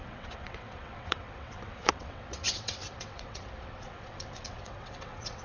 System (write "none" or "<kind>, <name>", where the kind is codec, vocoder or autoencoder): vocoder, WaveNeXt